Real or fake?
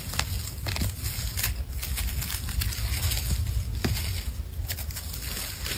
real